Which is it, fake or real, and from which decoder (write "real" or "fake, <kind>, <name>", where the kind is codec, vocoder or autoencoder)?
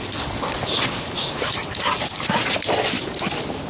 real